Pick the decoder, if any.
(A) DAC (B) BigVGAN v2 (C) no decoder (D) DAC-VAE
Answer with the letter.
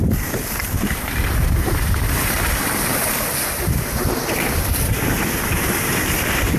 B